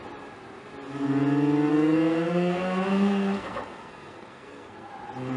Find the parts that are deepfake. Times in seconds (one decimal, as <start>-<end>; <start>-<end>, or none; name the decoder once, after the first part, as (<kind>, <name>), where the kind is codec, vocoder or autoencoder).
1.7-4.9 (codec, SNAC)